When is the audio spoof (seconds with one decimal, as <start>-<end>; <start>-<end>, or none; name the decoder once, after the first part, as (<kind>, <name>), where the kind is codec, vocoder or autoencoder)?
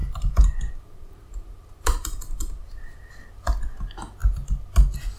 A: 0.0-3.1 (vocoder, BigVGAN v2)